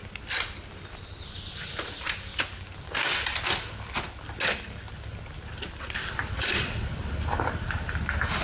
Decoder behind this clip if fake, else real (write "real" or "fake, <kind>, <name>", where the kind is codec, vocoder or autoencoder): real